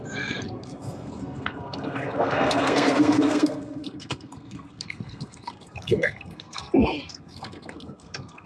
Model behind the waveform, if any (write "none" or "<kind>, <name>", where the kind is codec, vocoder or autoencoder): codec, SNAC